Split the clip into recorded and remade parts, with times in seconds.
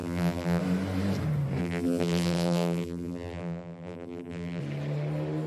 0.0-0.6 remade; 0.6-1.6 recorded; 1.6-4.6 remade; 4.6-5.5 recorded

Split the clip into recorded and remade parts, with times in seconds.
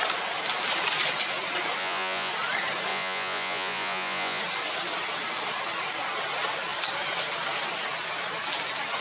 0.0-1.8 recorded; 1.8-2.3 remade; 2.3-2.9 recorded; 2.9-4.4 remade; 4.4-9.0 recorded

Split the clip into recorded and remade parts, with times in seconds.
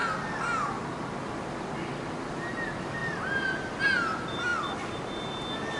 0.0-5.8 recorded